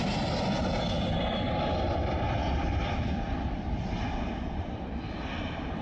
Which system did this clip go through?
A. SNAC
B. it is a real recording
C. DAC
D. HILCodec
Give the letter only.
B